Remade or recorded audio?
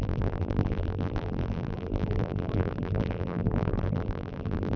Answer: remade